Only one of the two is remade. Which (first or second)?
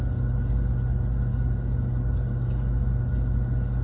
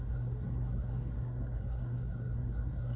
second